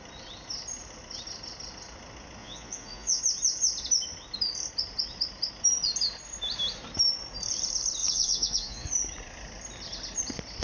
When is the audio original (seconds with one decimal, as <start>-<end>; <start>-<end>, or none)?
0.0-2.4; 3.2-8.0; 8.9-10.6